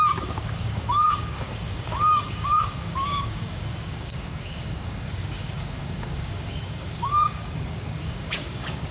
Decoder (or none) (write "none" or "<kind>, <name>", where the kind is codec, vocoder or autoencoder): codec, DAC